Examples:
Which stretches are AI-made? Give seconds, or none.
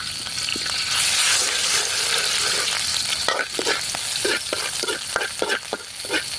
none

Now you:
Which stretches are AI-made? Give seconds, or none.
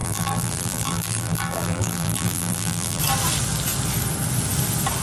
0.0-3.0 (vocoder, BigVGAN v2)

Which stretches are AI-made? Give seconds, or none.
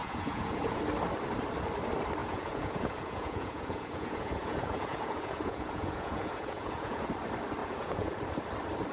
0.0-0.8 (vocoder, Vocos); 2.2-7.1; 7.6-8.2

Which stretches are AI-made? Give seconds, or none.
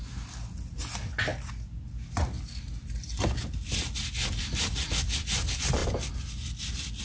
none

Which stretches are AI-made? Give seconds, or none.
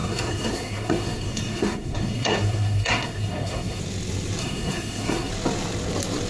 0.0-3.8 (codec, SNAC); 4.4-5.3